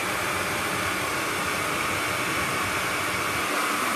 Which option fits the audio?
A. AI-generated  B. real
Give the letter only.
B